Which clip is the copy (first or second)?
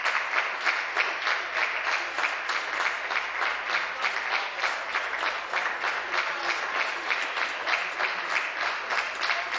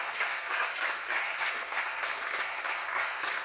second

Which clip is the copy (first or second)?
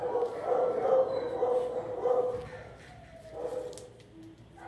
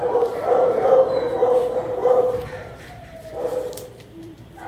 second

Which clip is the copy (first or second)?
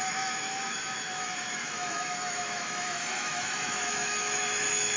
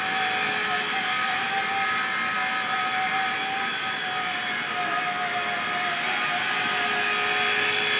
first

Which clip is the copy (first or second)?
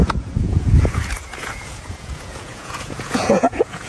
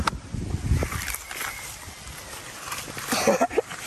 first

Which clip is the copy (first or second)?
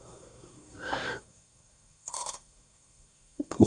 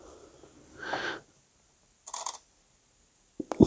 first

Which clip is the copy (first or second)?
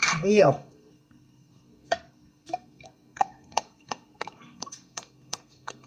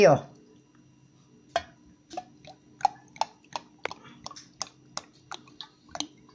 first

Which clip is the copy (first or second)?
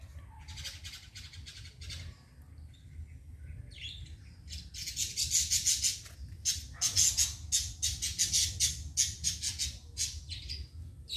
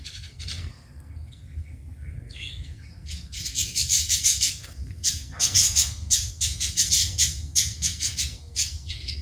second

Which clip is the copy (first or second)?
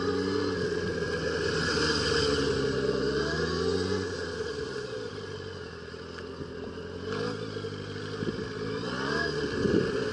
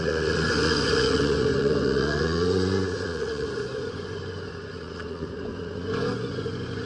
second